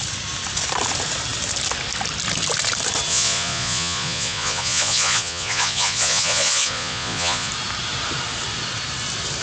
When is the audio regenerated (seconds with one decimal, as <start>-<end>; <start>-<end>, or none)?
3.1-7.5